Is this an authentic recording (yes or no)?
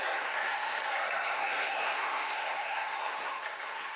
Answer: no